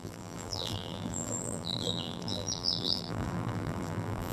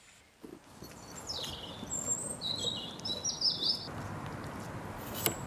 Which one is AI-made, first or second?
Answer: first